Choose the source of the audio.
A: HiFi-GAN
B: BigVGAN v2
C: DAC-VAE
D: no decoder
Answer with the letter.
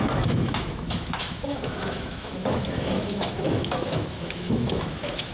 C